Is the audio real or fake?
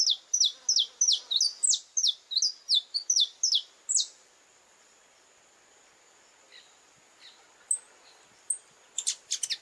real